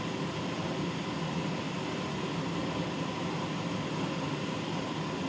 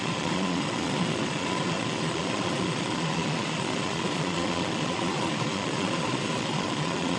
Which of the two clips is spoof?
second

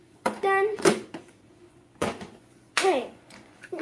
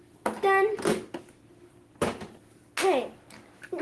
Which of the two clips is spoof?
first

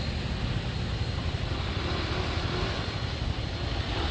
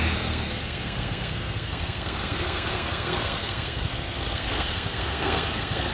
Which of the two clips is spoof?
second